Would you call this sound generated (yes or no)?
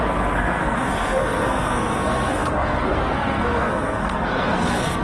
yes